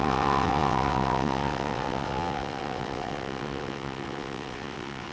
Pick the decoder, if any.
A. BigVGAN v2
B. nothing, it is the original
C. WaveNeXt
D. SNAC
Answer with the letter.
C